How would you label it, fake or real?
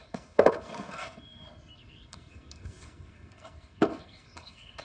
fake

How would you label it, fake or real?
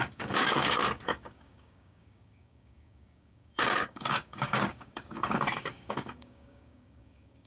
fake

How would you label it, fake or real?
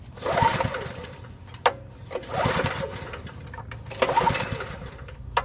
real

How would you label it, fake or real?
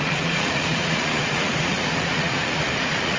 fake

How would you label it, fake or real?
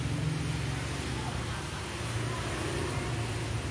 real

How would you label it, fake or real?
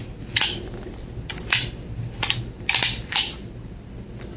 real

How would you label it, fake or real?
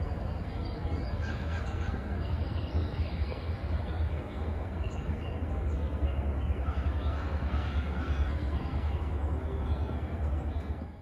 fake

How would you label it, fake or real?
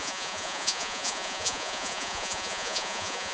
fake